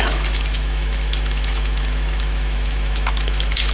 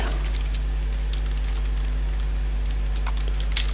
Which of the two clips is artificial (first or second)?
first